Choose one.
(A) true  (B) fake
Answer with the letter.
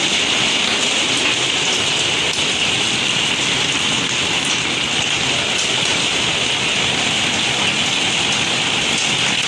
A